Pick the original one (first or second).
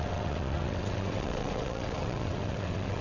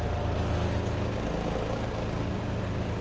second